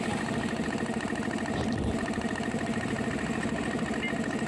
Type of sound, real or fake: real